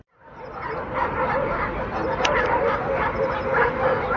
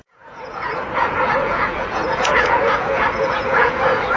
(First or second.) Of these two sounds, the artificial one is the second